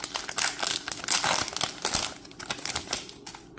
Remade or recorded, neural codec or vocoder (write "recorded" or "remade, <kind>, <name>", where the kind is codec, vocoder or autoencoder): recorded